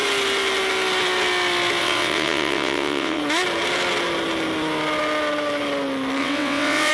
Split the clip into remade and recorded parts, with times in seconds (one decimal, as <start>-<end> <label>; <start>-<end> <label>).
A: 0.0-1.8 recorded; 1.8-3.2 remade; 3.2-6.2 recorded; 6.2-6.9 remade

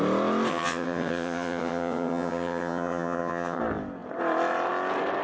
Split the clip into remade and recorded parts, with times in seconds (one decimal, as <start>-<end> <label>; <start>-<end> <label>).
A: 0.0-0.5 recorded; 0.5-3.6 remade; 3.6-5.2 recorded

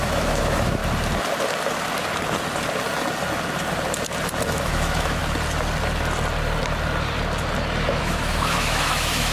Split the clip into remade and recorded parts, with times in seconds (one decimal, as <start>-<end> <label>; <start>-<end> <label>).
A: 0.0-0.8 remade; 0.8-4.5 recorded; 4.5-5.2 remade; 5.2-8.0 recorded; 8.0-9.3 remade

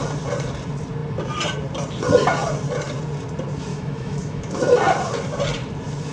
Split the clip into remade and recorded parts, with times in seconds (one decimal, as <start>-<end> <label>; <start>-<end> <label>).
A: 0.0-3.7 recorded; 3.7-4.5 remade; 4.5-6.1 recorded

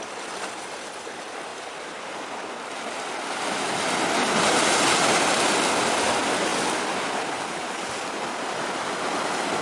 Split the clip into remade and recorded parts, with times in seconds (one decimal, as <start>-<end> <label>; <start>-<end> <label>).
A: 0.0-9.6 recorded

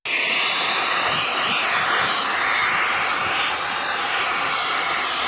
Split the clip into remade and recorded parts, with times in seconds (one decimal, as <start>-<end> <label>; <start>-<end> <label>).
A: 0.0-5.3 recorded